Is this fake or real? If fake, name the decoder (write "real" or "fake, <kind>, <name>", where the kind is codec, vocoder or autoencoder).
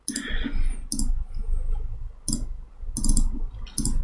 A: real